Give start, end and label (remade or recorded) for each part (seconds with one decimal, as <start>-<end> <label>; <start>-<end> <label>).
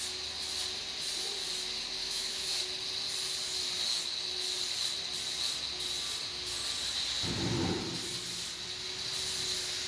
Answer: 0.0-2.0 recorded; 2.0-2.6 remade; 2.6-9.9 recorded